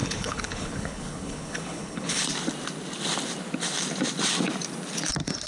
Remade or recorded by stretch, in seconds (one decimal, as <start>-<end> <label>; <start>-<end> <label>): 0.0-2.2 remade; 2.2-5.5 recorded